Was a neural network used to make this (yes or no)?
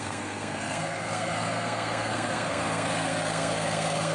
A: yes